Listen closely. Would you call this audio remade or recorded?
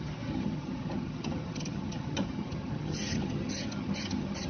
remade